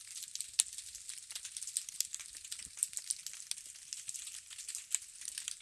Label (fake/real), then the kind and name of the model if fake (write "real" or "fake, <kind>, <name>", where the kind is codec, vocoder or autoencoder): real